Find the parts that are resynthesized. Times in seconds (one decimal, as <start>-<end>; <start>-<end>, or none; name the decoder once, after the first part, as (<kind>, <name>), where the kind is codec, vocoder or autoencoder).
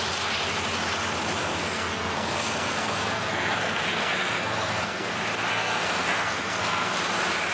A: 1.4-5.1 (codec, SNAC); 5.5-6.9